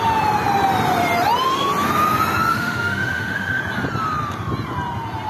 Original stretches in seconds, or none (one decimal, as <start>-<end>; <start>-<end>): 0.0-2.5; 3.6-5.3